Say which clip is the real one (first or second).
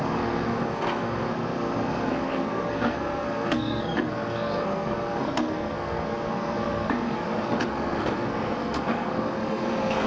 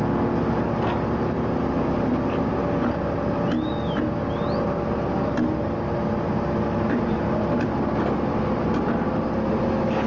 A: second